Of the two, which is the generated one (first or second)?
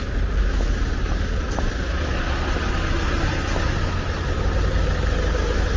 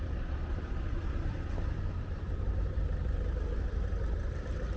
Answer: second